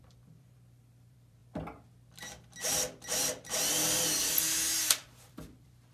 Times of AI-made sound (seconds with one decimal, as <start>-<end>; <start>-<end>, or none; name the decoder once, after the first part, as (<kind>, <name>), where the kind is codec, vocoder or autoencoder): 0.0-1.4 (vocoder, BigVGAN v2); 4.9-5.9